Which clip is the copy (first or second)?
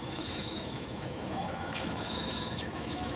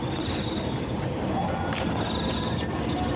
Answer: first